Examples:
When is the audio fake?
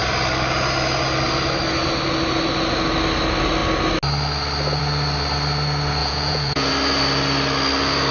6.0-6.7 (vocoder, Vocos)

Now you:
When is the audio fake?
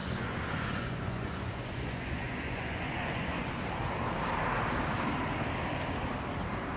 0.0-3.5 (vocoder, Vocos)